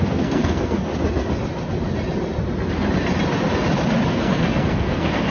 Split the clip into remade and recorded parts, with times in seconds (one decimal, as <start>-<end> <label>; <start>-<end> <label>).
0.0-0.9 remade; 0.9-4.1 recorded; 4.1-5.3 remade